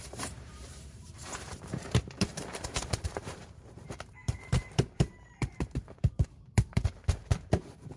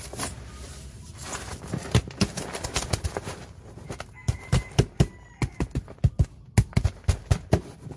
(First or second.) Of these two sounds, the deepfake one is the first